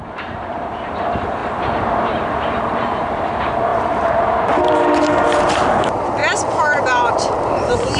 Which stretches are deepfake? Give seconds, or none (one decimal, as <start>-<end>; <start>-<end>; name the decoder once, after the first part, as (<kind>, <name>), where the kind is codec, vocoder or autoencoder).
0.0-6.2 (vocoder, BigVGAN v2); 6.8-8.0

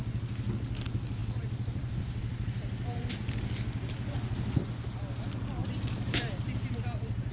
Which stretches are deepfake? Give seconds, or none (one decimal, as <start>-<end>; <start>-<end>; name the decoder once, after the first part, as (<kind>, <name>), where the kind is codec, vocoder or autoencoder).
1.2-3.3 (vocoder, BigVGAN v2); 5.6-7.3

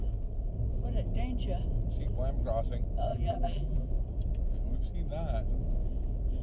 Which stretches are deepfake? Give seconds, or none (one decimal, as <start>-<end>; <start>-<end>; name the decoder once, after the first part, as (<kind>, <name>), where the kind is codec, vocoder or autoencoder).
3.1-3.9 (vocoder, BigVGAN v2)

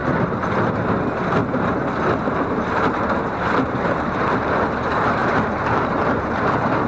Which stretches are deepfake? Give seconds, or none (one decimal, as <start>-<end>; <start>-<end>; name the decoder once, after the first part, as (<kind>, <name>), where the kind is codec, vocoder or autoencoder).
2.3-6.9 (vocoder, BigVGAN v2)

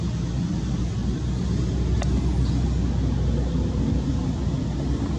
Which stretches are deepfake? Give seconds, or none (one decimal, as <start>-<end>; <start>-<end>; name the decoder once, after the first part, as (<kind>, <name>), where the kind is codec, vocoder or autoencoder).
none

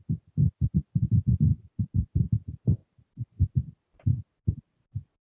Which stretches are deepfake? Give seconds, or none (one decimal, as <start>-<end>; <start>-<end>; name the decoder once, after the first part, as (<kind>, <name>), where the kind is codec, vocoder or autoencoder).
1.5-2.1 (vocoder, BigVGAN v2); 2.8-4.8

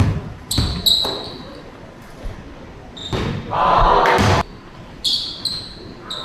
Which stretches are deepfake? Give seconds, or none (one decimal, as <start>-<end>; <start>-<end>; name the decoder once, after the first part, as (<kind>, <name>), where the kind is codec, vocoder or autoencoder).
3.0-3.6 (vocoder, BigVGAN v2); 4.2-5.1